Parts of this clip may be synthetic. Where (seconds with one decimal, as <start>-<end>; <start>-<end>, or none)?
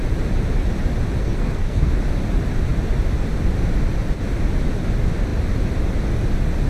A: 1.2-1.9